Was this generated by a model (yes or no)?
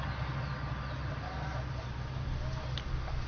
no